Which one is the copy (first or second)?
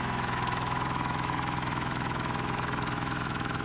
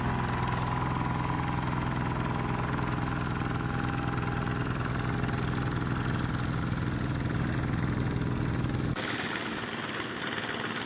first